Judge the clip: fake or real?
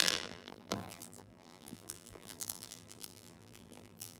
fake